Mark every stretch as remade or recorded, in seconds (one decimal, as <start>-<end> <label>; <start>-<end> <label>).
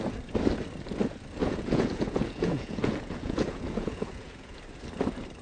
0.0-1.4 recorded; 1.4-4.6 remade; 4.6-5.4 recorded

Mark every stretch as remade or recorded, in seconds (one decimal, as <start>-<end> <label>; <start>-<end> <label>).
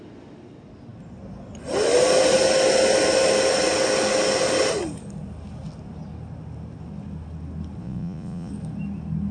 0.0-7.8 recorded; 7.8-8.5 remade; 8.5-9.3 recorded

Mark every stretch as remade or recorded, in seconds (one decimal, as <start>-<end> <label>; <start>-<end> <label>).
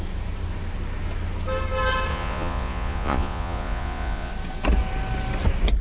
0.0-2.1 recorded; 2.1-4.3 remade; 4.3-5.8 recorded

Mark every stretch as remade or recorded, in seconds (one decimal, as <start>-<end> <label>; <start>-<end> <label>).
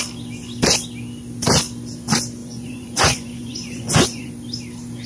0.0-2.4 recorded; 2.4-4.3 remade; 4.3-5.1 recorded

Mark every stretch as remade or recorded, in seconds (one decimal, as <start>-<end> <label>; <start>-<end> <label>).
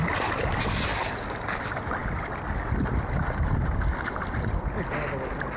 0.0-5.6 recorded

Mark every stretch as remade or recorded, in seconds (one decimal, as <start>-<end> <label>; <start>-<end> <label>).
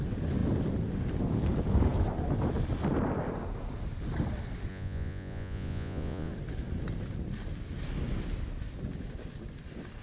0.0-4.7 recorded; 4.7-6.3 remade; 6.3-10.0 recorded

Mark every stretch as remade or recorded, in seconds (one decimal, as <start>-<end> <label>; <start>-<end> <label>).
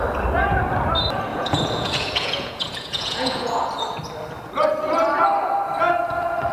0.0-1.3 recorded; 1.3-3.7 remade; 3.7-6.5 recorded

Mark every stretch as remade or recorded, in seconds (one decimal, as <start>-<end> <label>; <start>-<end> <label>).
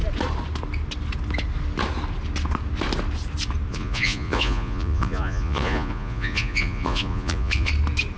0.0-3.7 recorded; 3.7-7.7 remade; 7.7-8.2 recorded